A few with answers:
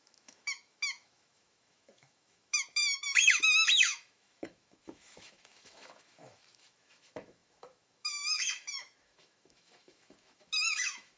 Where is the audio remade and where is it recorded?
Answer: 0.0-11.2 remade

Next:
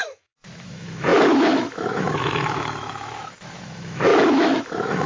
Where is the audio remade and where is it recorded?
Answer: 0.0-5.1 remade

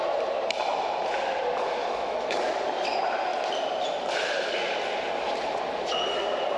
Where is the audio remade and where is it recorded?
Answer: 0.0-1.8 recorded; 1.8-2.4 remade; 2.4-6.6 recorded

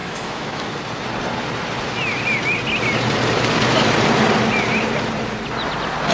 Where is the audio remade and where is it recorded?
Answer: 0.0-0.7 remade; 0.7-6.1 recorded

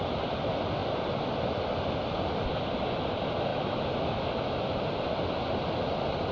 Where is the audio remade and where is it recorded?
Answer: 0.0-3.5 recorded; 3.5-4.2 remade; 4.2-6.3 recorded

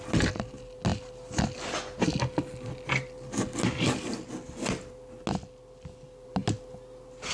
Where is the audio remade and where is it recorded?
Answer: 0.0-7.3 recorded

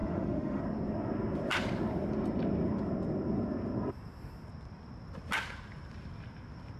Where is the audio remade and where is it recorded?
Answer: 0.0-0.6 remade; 0.6-6.8 recorded

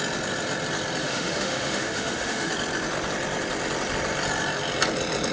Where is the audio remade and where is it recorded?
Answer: 0.0-1.0 recorded; 1.0-2.5 remade; 2.5-5.3 recorded